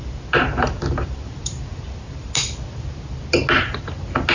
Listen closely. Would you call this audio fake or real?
real